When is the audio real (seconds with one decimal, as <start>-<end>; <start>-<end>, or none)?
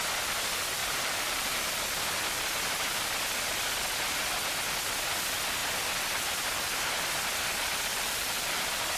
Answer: 0.0-0.8; 1.7-5.6; 7.0-7.9